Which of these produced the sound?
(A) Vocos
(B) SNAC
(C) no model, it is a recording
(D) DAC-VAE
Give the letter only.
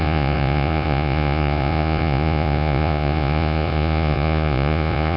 A